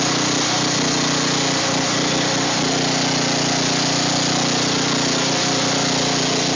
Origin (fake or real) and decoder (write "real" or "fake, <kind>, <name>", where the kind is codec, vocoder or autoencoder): real